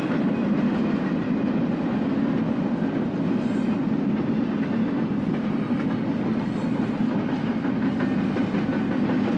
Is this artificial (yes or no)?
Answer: no